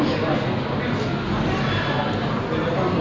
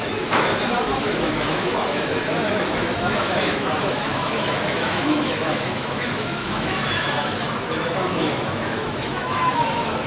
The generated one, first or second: second